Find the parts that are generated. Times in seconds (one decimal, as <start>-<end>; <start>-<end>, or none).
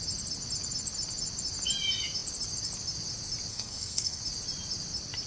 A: 3.5-4.2